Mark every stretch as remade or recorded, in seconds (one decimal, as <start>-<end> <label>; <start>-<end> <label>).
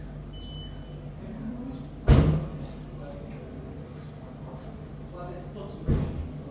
0.0-2.5 recorded; 2.5-3.1 remade; 3.1-6.5 recorded